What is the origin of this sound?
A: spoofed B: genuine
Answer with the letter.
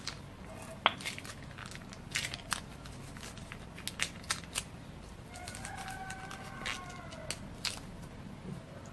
B